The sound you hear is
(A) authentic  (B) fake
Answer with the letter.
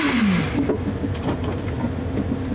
A